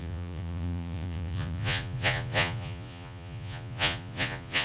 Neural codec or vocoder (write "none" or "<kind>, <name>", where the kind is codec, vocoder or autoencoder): vocoder, Vocos